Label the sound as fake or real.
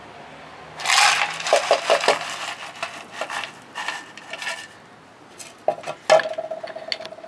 real